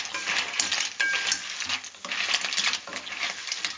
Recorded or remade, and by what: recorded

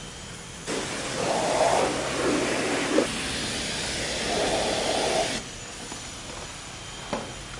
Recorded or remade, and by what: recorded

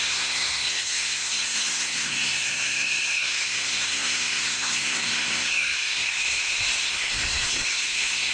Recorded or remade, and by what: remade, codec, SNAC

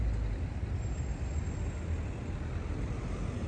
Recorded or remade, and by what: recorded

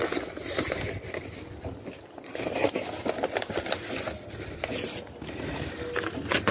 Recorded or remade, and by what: recorded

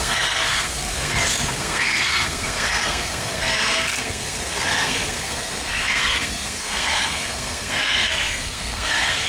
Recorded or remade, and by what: remade, codec, SNAC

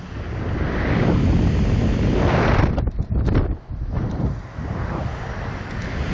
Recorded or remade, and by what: recorded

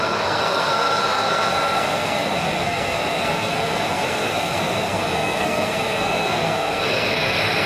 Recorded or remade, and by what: remade, codec, SNAC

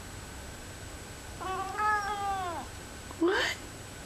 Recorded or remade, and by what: recorded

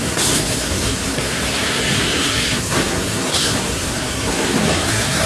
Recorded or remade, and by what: remade, codec, SNAC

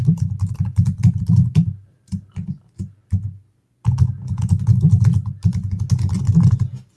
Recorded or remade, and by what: recorded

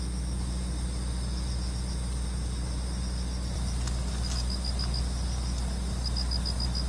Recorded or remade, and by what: recorded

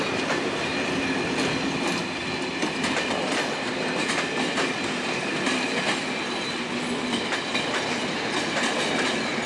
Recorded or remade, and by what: recorded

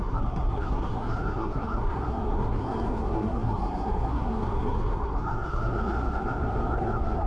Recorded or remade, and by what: remade, codec, SNAC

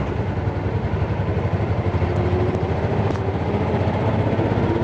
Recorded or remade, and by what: recorded